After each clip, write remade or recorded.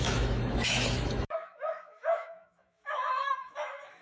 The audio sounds remade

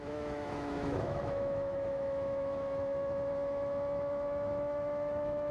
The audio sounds remade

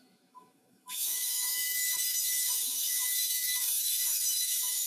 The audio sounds remade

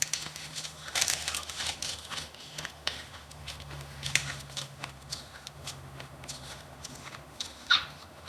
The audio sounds remade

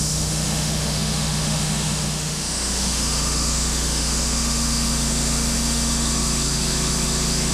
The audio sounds remade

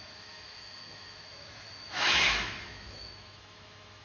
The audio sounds remade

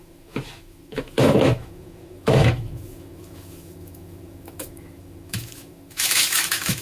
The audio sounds remade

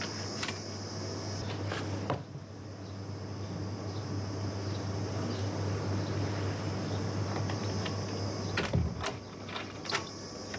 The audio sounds recorded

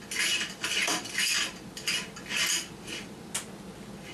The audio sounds recorded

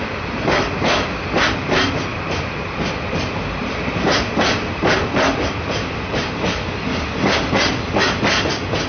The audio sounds recorded